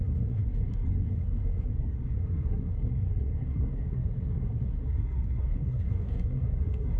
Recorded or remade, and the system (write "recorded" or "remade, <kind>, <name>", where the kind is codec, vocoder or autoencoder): remade, codec, SNAC